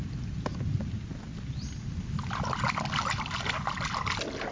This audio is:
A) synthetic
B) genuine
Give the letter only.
B